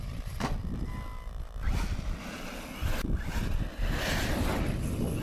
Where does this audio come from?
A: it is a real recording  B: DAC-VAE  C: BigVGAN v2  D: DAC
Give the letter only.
A